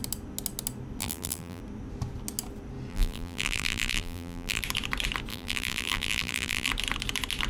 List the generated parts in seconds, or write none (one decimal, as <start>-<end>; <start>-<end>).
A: 1.0-1.6; 2.9-4.6; 5.3-6.7